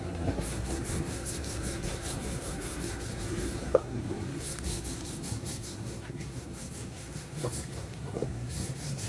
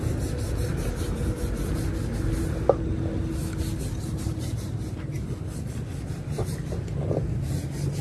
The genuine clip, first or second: second